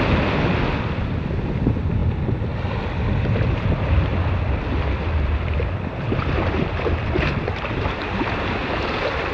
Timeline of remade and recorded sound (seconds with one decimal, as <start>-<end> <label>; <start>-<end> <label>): 0.0-9.3 recorded